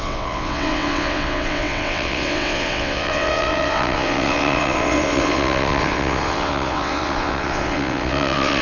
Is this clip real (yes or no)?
no